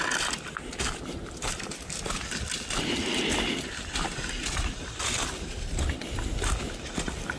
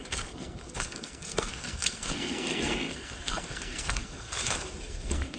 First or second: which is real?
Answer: first